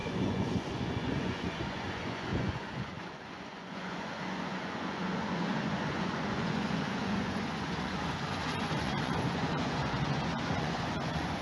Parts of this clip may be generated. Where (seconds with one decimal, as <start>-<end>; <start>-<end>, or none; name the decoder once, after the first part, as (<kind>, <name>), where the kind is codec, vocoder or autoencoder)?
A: 0.0-11.4 (vocoder, Vocos)